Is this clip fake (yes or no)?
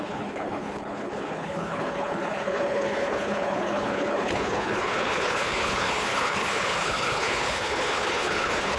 yes